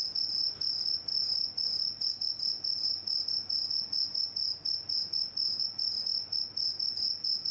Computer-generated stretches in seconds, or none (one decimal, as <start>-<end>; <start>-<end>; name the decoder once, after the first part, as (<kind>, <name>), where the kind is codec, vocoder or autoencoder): none